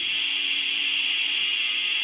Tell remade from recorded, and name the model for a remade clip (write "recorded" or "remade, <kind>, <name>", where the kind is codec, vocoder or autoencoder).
recorded